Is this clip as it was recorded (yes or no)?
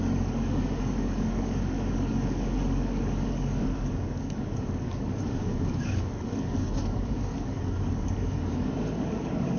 no